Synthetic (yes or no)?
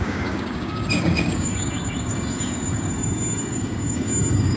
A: yes